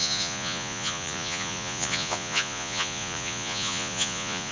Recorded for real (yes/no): no